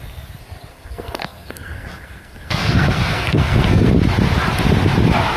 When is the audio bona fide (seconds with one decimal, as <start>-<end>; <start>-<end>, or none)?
0.0-0.7; 3.9-5.4